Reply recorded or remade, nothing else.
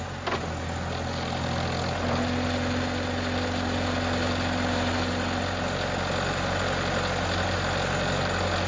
recorded